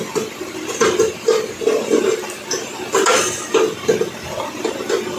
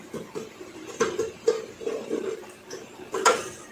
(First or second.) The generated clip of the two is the second